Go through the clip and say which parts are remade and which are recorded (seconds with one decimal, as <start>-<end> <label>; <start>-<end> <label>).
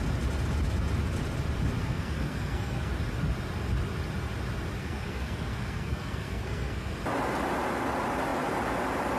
0.0-1.8 recorded; 1.8-2.9 remade; 2.9-4.8 recorded; 4.8-7.0 remade; 7.0-9.2 recorded